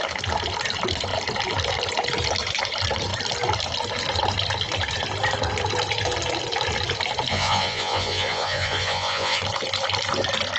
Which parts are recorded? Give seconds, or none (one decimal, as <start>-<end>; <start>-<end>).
0.0-7.3; 9.4-10.6